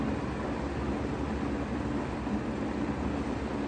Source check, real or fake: real